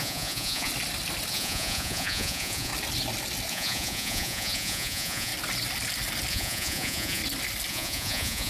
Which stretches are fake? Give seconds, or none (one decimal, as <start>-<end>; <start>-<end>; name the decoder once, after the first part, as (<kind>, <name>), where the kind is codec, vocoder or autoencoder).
0.0-0.7 (vocoder, Vocos); 1.3-2.7; 3.5-5.3; 6.3-7.2; 7.7-8.5